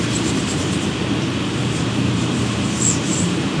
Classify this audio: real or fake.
fake